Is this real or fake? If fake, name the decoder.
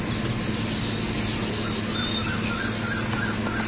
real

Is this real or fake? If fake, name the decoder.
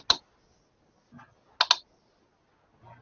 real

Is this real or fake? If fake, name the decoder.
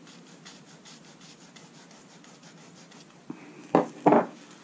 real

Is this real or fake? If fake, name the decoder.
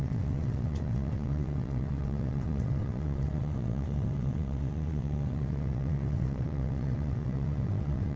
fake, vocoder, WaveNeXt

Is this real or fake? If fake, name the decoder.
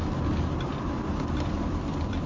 real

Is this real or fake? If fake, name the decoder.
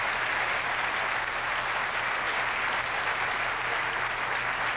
real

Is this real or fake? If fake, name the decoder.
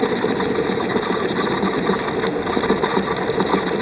real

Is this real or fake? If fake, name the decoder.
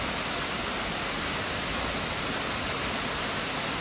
real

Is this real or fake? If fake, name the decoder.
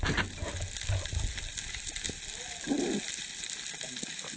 real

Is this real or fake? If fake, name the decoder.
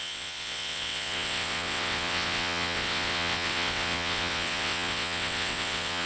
fake, vocoder, WaveNeXt